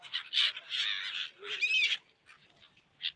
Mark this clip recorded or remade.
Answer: recorded